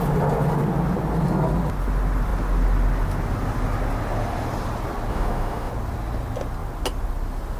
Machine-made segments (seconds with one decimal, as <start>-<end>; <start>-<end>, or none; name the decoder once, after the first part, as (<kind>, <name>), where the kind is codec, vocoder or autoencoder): 5.1-5.7 (autoencoder, DAC-VAE)